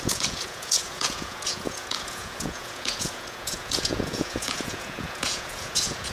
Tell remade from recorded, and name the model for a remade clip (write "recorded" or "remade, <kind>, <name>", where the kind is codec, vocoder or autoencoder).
remade, vocoder, Vocos